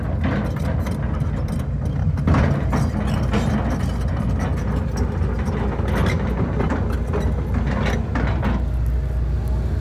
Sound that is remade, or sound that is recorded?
recorded